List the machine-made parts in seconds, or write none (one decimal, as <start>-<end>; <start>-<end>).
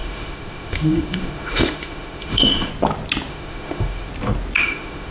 0.0-2.7; 3.3-4.1; 4.6-5.1